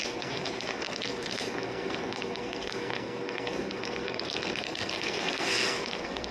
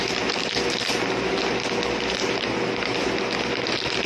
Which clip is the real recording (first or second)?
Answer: second